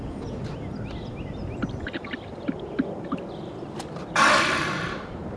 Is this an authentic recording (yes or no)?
yes